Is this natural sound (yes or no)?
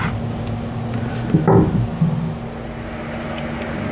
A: yes